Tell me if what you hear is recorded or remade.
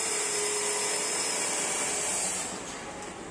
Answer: recorded